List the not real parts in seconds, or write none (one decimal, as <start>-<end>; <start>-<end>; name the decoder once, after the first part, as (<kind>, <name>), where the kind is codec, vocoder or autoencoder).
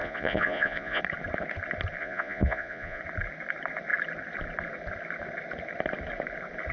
0.0-1.0 (vocoder, Vocos); 2.0-3.0